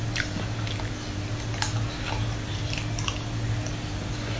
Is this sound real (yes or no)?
yes